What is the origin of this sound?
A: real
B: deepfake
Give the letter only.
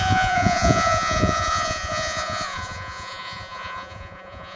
B